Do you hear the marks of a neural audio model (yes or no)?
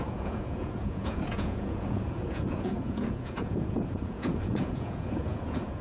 yes